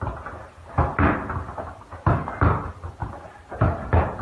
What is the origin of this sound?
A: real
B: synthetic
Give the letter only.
A